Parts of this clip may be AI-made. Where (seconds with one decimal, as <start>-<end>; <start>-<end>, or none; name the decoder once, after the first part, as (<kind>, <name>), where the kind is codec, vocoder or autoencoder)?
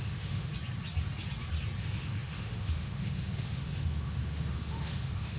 0.0-0.5 (autoencoder, DAC-VAE); 1.8-5.4